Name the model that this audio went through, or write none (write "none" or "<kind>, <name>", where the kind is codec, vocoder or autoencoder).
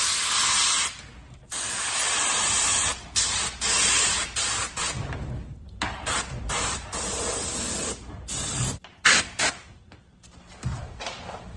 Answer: none